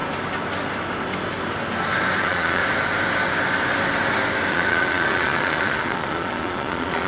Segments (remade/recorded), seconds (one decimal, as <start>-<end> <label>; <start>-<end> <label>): 0.0-2.2 recorded; 2.2-2.6 remade; 2.6-4.5 recorded; 4.5-7.1 remade